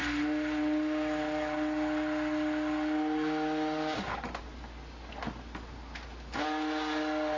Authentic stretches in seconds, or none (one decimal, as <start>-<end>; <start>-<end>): 0.0-7.4